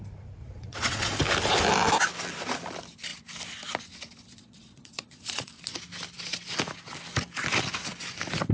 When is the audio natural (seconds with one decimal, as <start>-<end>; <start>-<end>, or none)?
0.0-0.4; 1.2-4.3; 5.5-8.5